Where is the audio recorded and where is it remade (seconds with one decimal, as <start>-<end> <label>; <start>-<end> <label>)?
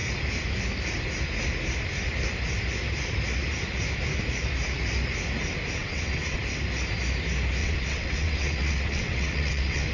0.0-5.8 recorded; 5.8-6.4 remade; 6.4-7.6 recorded; 7.6-9.9 remade